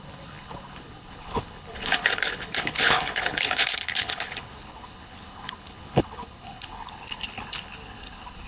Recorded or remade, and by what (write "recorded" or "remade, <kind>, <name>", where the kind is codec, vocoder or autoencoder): remade, codec, HILCodec